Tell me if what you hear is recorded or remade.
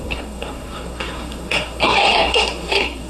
remade